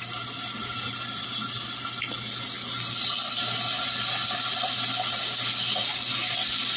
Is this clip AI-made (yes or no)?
no